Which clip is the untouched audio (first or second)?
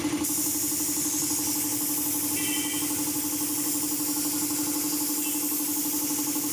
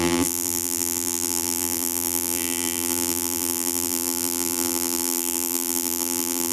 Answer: first